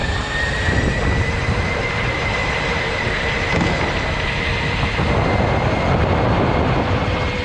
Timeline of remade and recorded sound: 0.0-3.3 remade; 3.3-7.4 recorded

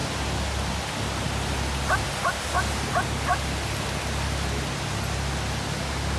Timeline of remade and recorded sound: 0.0-6.2 recorded

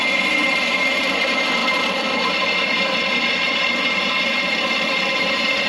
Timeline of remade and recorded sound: 0.0-5.7 remade

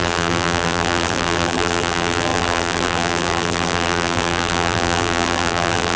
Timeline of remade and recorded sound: 0.0-6.0 remade